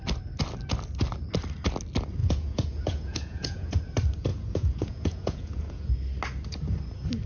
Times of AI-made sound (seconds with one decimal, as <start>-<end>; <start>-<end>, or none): 2.2-3.8; 4.3-5.9